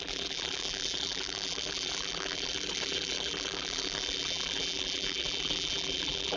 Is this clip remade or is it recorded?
remade